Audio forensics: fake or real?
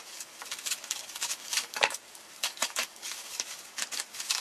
fake